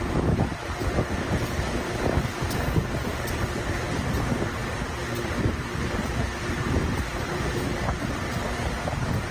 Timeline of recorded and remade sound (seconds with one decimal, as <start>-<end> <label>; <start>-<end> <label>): 0.0-4.6 remade; 4.6-5.4 recorded; 5.4-9.3 remade